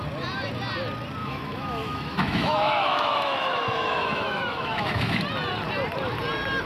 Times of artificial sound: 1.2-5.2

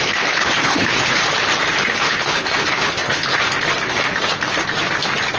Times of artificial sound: 0.0-1.2; 1.8-3.3

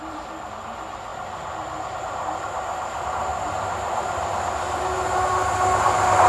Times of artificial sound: none

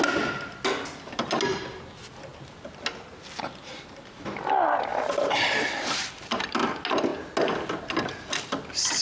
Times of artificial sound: 4.9-6.4

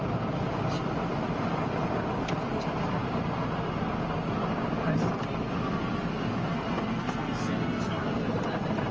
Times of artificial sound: 7.0-8.0

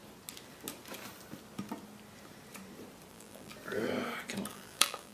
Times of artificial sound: 3.1-3.5; 4.5-5.1